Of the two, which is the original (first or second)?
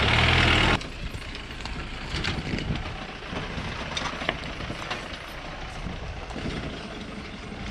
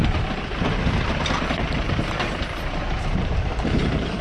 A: first